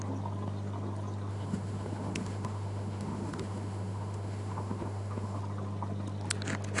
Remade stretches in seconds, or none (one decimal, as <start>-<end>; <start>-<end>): 1.3-5.4